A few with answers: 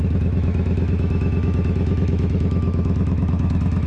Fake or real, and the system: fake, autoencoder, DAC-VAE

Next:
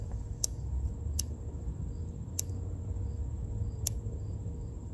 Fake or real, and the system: real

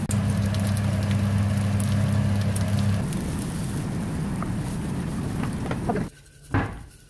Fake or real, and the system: real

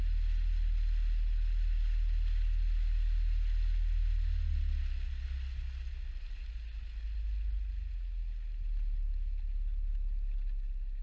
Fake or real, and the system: real